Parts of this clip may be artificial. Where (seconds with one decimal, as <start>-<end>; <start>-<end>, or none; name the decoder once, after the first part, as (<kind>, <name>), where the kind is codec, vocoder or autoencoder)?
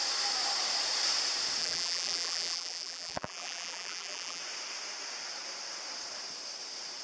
1.6-4.4 (vocoder, BigVGAN v2)